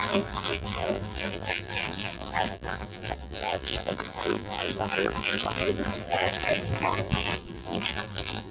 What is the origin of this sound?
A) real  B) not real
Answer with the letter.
B